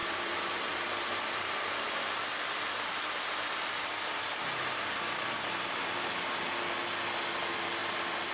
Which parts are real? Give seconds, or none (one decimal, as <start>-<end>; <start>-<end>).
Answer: 5.0-7.8